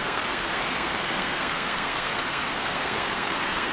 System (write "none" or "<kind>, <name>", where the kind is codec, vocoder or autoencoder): codec, SNAC